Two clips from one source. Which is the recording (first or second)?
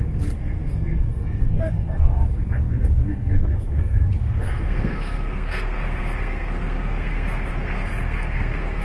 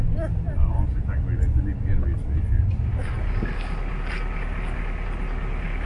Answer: second